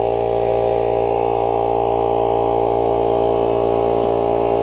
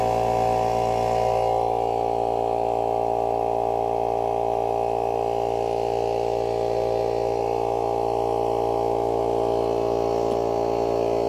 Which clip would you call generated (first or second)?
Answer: first